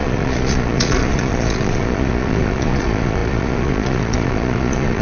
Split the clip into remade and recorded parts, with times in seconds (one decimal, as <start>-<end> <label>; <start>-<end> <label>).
0.0-5.0 remade